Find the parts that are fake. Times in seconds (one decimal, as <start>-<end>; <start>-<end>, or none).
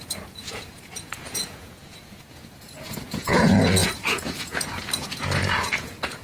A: 0.0-6.2